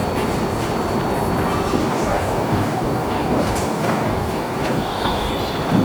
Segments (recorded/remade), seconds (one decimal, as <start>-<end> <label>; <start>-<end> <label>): 0.0-1.8 recorded; 1.8-5.3 remade; 5.3-5.8 recorded